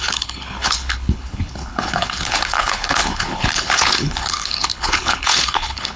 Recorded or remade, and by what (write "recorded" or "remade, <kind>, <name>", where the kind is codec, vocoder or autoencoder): remade, codec, HILCodec